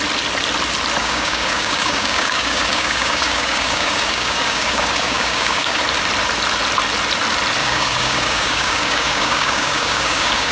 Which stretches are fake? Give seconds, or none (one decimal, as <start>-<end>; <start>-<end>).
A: 1.0-5.8; 7.6-10.5